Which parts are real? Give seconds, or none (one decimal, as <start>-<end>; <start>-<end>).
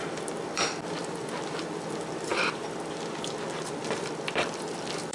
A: none